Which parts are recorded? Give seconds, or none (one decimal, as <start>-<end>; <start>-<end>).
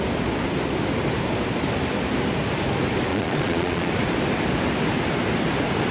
0.0-3.1; 3.9-5.9